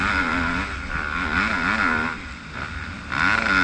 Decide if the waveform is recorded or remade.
recorded